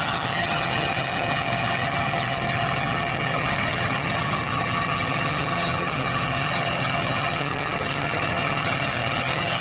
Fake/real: fake